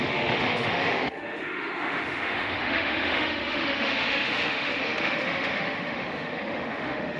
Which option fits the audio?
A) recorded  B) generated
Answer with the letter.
B